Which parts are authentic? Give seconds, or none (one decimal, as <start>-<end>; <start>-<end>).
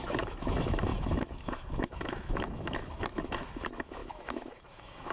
none